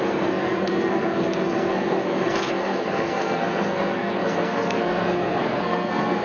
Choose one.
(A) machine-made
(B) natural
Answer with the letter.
A